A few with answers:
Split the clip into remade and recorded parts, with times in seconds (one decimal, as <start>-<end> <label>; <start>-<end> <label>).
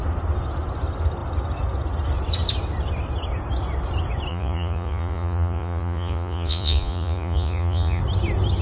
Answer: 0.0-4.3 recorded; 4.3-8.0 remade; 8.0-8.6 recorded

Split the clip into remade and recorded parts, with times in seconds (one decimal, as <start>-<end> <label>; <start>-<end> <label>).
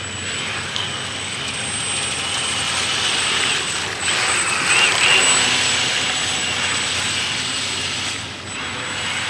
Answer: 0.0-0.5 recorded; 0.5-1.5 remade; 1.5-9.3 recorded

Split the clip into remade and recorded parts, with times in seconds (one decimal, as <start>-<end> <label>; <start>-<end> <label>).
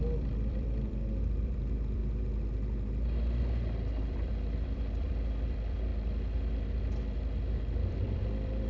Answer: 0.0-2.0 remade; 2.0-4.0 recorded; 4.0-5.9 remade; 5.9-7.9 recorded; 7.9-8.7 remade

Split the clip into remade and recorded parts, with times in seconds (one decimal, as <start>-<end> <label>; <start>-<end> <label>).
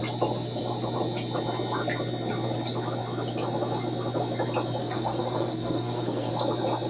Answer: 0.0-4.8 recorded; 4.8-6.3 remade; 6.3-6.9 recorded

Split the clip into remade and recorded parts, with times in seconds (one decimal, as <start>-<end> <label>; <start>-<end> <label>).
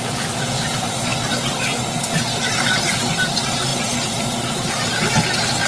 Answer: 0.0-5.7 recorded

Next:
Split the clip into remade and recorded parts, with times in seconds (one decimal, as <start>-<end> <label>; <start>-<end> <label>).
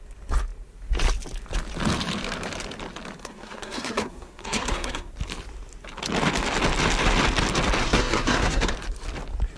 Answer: 0.0-3.2 recorded; 3.2-5.1 remade; 5.1-7.8 recorded; 7.8-8.7 remade; 8.7-9.6 recorded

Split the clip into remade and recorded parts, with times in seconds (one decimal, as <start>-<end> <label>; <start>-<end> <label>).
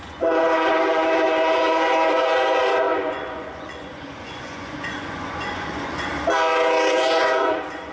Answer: 0.0-6.1 remade; 6.1-6.9 recorded; 6.9-7.9 remade